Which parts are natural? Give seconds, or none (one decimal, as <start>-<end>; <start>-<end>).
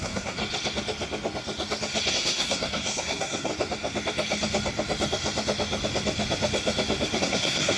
0.4-2.1; 3.5-7.2